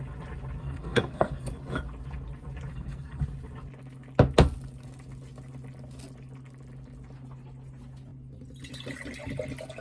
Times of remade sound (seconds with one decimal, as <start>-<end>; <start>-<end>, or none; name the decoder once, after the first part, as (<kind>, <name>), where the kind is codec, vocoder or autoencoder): 0.6-1.5 (codec, SNAC); 2.7-3.2